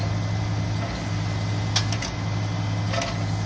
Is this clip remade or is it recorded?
recorded